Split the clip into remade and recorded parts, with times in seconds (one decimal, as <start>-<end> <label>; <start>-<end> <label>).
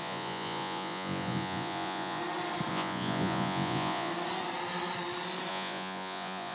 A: 0.0-2.2 remade; 2.2-2.7 recorded; 2.7-4.1 remade; 4.1-5.5 recorded; 5.5-6.5 remade